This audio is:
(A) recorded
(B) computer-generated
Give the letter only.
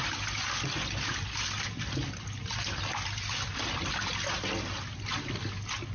A